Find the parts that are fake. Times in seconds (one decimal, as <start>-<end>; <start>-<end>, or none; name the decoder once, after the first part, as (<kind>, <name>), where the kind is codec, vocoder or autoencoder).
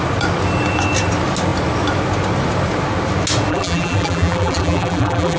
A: 3.5-5.4 (vocoder, BigVGAN v2)